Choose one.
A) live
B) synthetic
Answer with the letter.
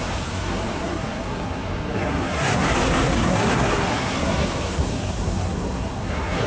B